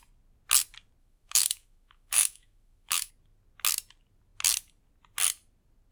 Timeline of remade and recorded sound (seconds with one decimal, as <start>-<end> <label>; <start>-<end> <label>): 0.0-1.0 recorded; 1.0-3.1 remade; 3.1-5.9 recorded